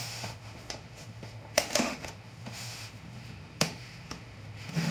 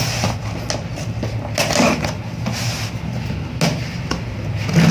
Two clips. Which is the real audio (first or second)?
second